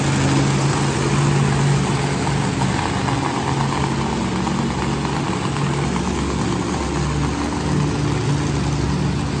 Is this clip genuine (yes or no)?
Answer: yes